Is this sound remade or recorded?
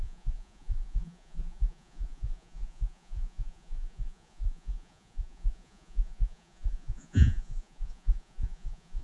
remade